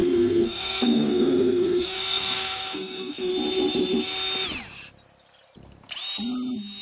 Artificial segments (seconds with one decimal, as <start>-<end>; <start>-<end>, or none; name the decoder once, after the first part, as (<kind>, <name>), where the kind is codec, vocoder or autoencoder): 0.0-3.3 (codec, SNAC)